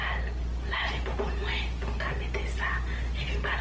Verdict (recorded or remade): recorded